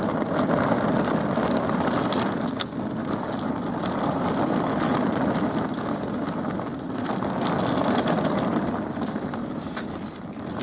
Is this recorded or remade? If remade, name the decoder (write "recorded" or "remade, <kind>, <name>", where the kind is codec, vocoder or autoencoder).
recorded